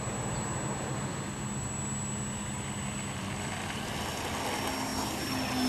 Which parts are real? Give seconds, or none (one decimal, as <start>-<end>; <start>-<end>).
0.0-5.7